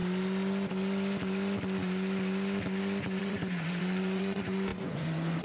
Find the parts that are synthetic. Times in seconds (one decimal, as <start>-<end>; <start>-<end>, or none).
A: 3.2-5.4